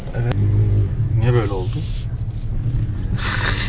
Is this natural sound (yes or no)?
yes